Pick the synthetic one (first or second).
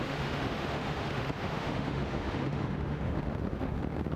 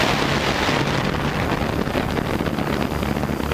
first